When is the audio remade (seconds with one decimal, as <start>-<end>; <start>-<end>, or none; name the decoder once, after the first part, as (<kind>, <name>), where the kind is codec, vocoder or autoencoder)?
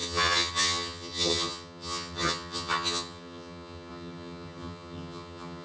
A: 0.0-5.6 (vocoder, HiFi-GAN)